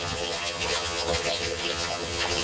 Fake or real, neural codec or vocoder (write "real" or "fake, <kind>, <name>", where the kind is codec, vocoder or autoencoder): fake, vocoder, HiFi-GAN